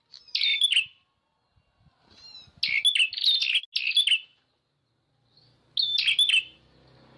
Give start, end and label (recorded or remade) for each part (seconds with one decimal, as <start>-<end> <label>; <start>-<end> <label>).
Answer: 0.0-7.2 recorded